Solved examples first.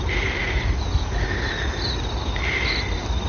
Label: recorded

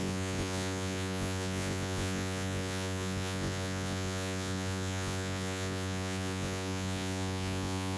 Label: remade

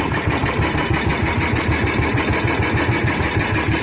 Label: recorded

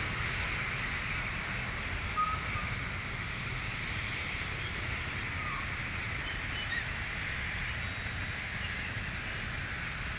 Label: recorded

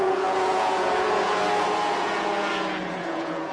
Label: remade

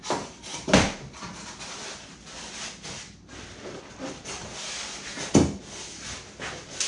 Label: recorded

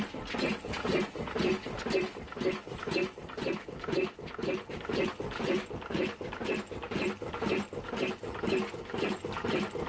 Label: recorded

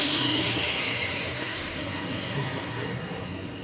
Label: remade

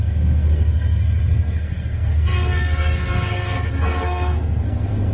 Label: remade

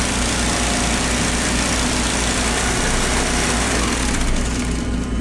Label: recorded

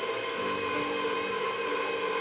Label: recorded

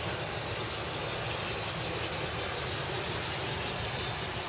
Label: recorded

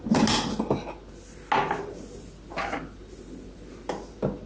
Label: recorded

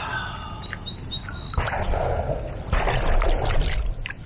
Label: recorded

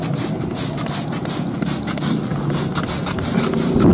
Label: recorded